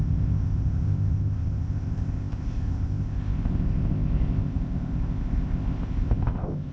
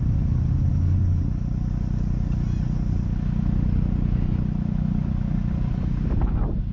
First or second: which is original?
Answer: second